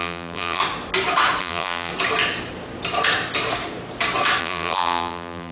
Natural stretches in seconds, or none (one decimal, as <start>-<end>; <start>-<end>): 0.6-1.4; 1.9-4.4